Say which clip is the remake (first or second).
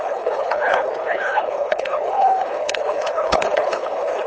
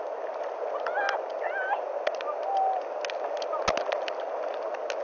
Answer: first